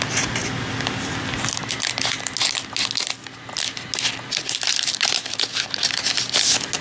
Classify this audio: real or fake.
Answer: real